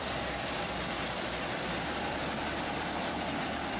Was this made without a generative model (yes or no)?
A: no